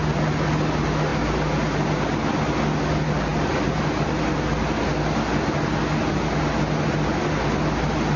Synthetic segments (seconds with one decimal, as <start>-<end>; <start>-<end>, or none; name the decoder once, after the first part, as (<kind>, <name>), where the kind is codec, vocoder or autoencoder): none